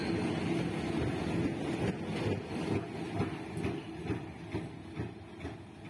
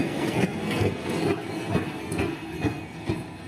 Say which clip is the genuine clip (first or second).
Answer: first